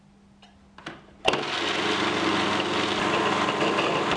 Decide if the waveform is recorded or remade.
recorded